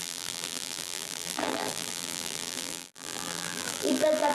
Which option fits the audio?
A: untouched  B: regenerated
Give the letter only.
B